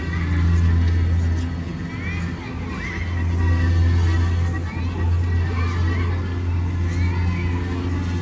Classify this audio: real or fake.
real